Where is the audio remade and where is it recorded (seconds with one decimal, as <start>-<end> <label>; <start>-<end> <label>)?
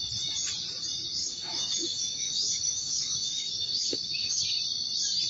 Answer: 0.0-1.2 recorded; 1.2-4.4 remade; 4.4-5.3 recorded